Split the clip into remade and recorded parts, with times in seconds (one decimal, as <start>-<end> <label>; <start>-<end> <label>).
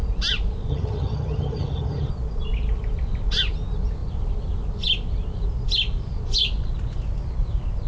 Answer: 0.0-0.7 recorded; 0.7-2.1 remade; 2.1-7.9 recorded